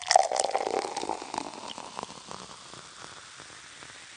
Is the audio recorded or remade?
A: recorded